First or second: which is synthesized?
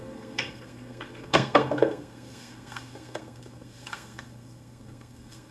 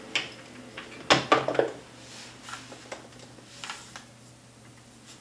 first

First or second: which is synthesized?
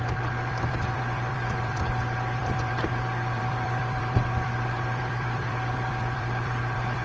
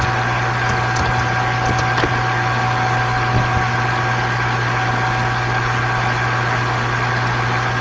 first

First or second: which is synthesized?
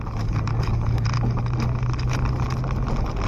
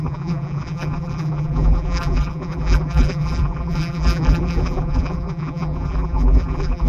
second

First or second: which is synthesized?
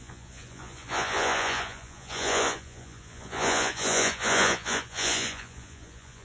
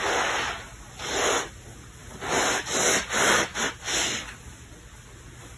first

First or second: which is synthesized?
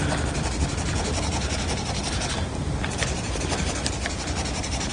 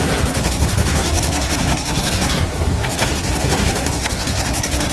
second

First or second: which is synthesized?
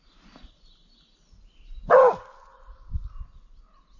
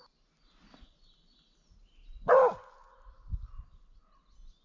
first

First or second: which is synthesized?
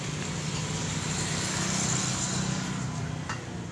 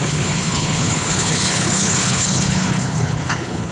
second